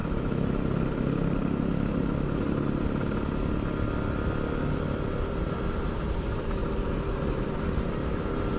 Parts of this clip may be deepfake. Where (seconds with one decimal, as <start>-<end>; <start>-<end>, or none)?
4.6-6.6; 7.3-8.6